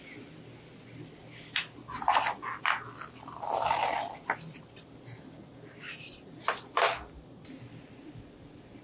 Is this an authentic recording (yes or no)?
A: yes